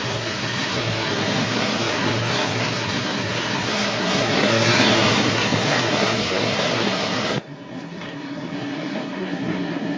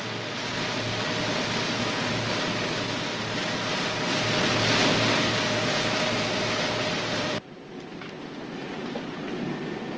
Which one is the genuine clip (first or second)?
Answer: second